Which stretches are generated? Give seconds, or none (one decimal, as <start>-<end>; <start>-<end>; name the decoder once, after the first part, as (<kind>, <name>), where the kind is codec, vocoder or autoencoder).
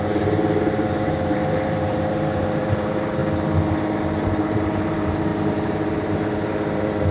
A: 0.0-3.2 (vocoder, BigVGAN v2); 4.2-7.1